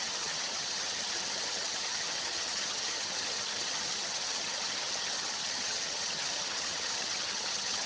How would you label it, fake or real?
fake